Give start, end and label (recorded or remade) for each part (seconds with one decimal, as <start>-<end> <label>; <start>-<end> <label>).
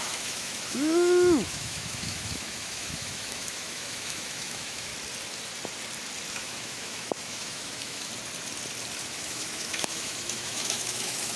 0.0-4.9 remade; 4.9-6.3 recorded; 6.3-8.1 remade; 8.1-9.1 recorded; 9.1-11.4 remade